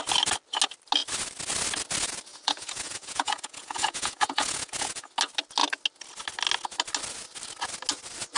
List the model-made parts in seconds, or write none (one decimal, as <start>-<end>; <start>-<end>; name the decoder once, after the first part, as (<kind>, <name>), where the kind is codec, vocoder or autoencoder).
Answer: 2.3-5.1 (vocoder, Vocos)